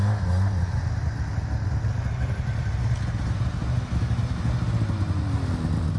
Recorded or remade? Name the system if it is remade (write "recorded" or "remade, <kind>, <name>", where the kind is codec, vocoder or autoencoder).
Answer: recorded